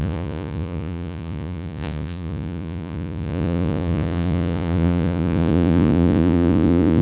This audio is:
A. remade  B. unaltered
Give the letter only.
A